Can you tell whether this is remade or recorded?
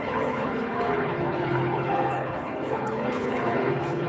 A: remade